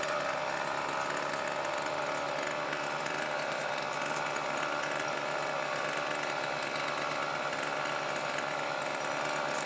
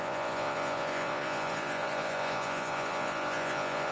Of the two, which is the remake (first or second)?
second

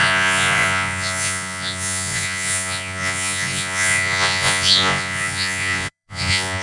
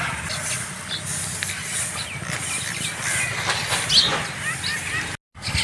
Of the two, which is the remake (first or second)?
first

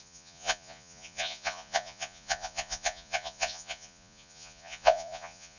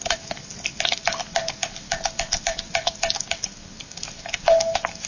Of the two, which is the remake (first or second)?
first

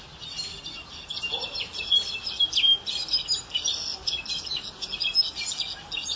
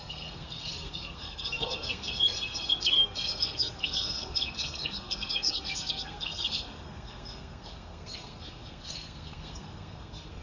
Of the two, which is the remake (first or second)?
second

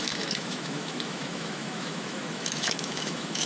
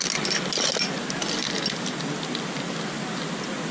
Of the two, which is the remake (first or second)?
first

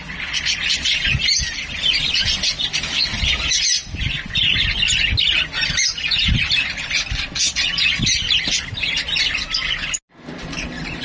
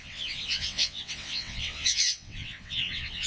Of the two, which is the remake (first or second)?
second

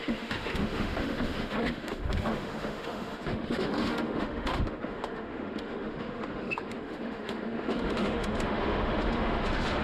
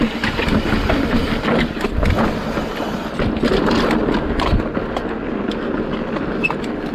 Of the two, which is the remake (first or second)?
first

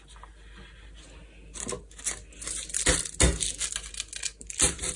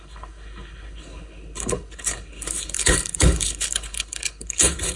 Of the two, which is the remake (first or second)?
second